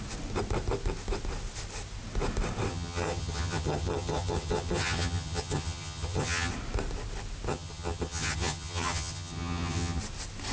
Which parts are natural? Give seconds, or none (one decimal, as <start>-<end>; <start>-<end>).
0.0-2.7; 6.5-7.5; 10.0-10.5